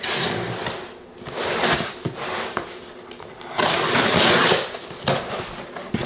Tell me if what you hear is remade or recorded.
recorded